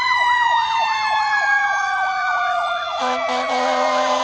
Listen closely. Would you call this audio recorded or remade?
remade